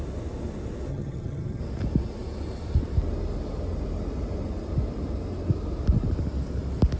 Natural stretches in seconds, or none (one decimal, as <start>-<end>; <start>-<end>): 0.0-0.9; 1.6-7.0